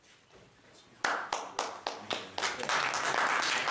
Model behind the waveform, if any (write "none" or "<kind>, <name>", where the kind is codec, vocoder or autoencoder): none